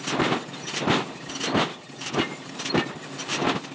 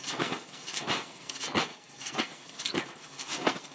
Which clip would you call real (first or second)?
first